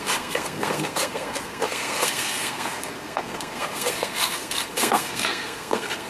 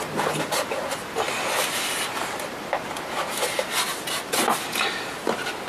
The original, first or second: second